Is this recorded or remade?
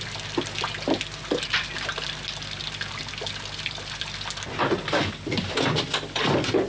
recorded